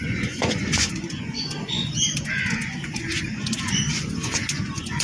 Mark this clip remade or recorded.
remade